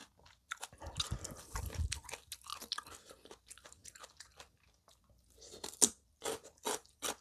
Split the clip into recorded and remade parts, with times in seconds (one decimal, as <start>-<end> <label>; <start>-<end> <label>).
0.0-7.2 recorded